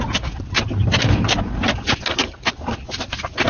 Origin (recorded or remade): recorded